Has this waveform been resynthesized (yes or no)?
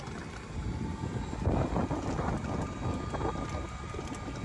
no